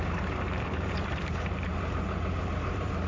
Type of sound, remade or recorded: remade